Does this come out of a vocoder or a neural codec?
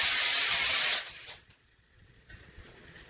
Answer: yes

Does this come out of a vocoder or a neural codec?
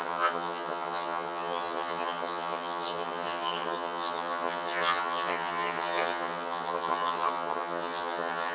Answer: yes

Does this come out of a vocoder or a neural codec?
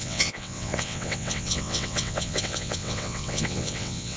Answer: yes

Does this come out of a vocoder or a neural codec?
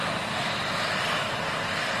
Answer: no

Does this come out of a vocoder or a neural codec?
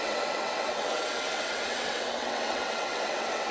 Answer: yes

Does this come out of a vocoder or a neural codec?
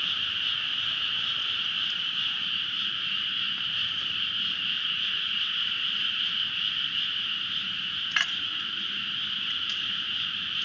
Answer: yes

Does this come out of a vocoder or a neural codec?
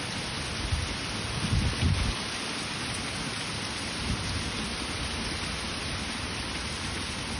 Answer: no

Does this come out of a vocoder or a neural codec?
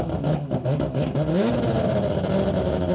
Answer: no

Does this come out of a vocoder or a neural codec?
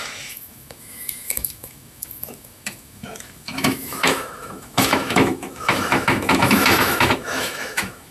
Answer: yes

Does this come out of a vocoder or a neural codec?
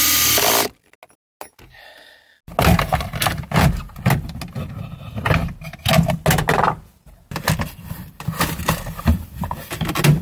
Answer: no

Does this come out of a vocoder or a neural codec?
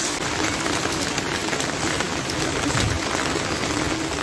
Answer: no